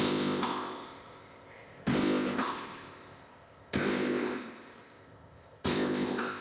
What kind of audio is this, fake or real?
fake